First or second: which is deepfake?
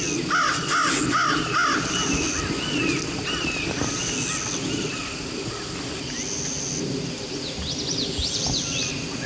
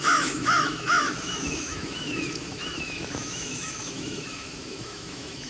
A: second